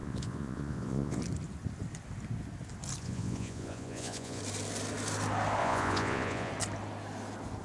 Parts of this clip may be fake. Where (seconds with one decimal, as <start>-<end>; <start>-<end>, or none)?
0.0-1.2; 3.0-4.4; 5.6-6.5